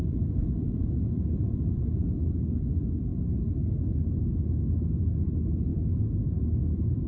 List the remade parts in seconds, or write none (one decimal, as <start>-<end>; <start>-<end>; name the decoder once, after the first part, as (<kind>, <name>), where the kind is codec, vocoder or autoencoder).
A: 0.4-1.8 (vocoder, Vocos); 5.7-7.1